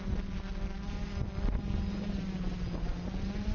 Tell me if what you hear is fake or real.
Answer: real